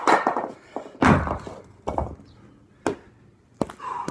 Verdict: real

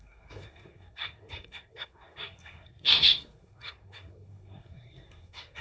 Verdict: fake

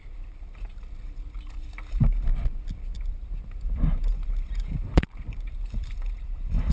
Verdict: fake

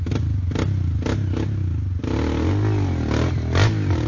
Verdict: real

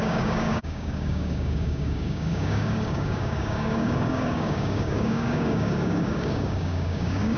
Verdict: fake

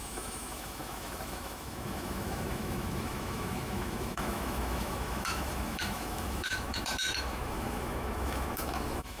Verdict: fake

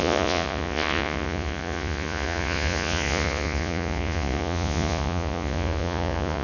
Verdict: fake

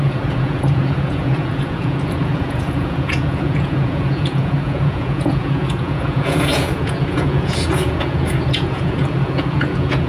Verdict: fake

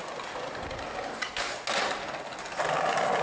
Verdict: real